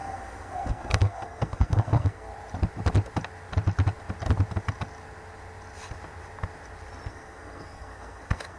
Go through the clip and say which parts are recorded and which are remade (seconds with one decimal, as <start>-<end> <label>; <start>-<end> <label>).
0.0-2.3 remade; 2.3-7.1 recorded; 7.1-8.6 remade